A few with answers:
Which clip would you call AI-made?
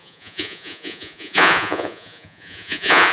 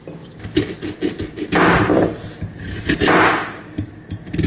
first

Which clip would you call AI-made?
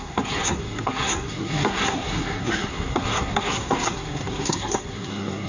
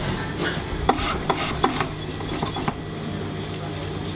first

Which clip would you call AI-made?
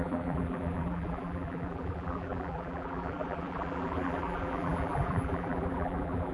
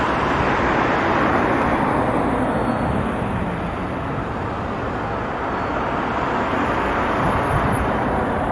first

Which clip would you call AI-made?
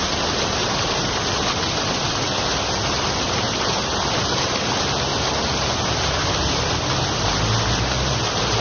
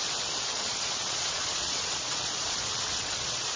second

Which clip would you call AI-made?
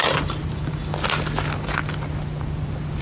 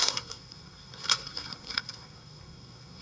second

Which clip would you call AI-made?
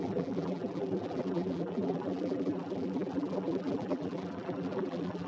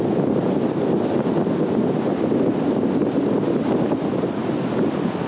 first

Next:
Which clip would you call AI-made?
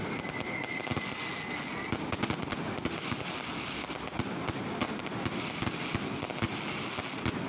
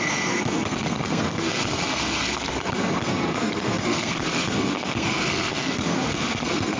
second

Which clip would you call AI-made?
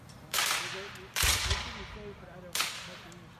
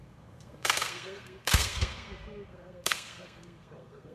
second